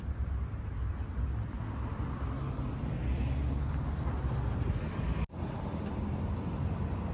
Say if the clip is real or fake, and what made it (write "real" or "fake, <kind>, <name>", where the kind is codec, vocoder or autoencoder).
real